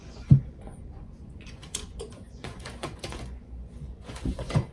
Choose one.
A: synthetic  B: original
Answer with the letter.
A